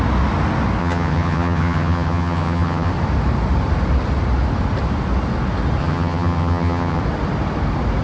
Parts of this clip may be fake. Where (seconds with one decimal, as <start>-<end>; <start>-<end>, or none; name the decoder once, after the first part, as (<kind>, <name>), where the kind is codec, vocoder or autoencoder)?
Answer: 0.8-2.9 (vocoder, HiFi-GAN); 5.8-7.0